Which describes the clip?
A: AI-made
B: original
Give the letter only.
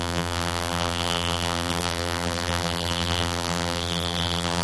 A